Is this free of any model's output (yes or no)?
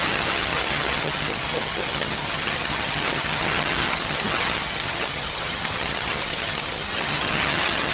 no